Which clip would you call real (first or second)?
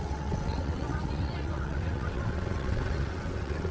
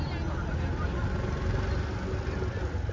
second